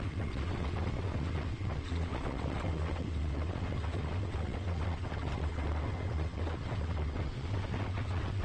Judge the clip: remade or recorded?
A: remade